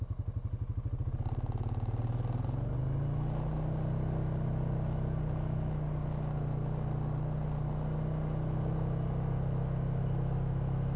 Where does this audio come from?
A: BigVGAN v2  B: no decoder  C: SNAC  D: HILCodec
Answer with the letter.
B